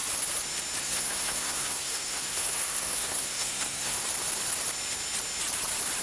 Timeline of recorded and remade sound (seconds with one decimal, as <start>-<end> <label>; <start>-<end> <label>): 0.0-0.8 recorded; 0.8-4.0 remade; 4.0-6.0 recorded